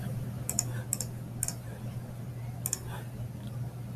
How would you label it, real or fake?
real